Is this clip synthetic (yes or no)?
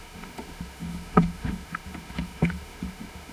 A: yes